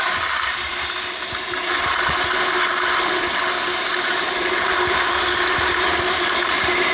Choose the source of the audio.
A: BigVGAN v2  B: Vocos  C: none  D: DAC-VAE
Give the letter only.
C